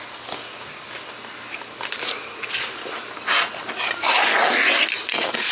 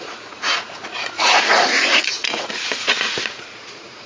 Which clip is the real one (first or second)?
first